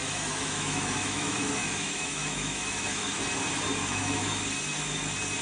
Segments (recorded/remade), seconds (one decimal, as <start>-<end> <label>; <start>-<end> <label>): 0.0-3.2 remade; 3.2-3.8 recorded; 3.8-4.4 remade; 4.4-5.4 recorded